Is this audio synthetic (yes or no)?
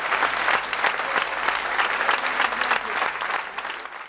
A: no